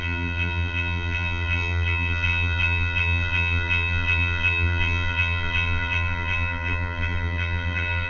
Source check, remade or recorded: remade